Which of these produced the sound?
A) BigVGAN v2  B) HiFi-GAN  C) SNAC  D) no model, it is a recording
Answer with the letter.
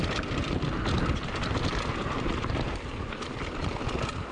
D